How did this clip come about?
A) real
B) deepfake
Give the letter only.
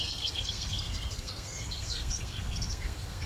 B